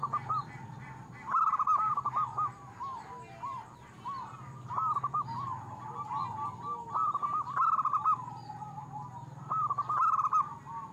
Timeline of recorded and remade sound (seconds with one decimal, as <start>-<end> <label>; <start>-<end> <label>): 0.0-10.9 recorded